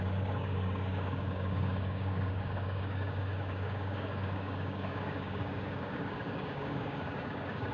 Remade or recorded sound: remade